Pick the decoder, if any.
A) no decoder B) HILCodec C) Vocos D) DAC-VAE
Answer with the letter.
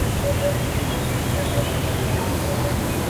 A